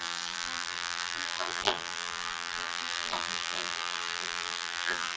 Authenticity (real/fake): fake